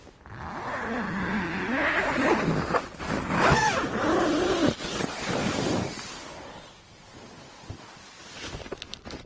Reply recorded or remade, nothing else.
recorded